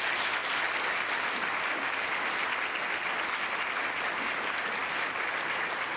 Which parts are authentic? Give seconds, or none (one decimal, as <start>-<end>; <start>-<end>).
0.0-6.0